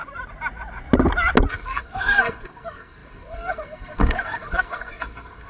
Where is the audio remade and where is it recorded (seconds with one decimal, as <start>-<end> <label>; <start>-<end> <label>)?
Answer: 0.0-1.5 recorded; 1.5-5.5 remade